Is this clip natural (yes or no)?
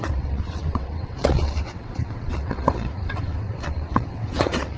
no